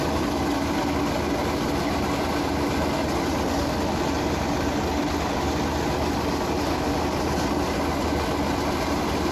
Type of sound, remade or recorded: recorded